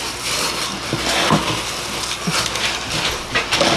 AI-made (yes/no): no